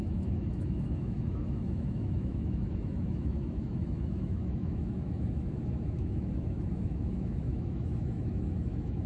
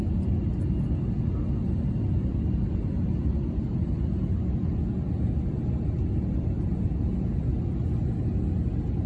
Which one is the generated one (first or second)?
first